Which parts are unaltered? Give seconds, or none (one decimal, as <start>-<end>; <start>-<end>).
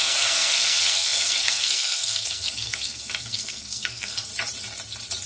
4.3-5.3